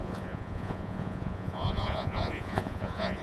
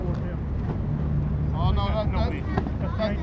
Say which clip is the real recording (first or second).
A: second